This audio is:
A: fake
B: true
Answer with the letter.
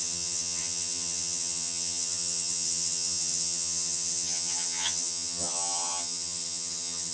A